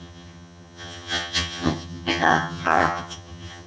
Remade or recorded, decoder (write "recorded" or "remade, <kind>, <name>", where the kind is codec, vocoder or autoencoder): remade, vocoder, HiFi-GAN